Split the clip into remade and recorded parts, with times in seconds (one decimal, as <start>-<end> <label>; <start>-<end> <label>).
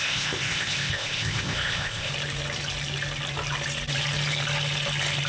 0.0-2.1 remade; 2.1-5.3 recorded